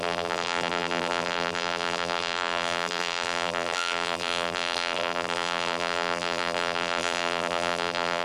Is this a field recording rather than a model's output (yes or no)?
no